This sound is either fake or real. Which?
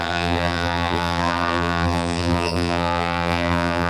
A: fake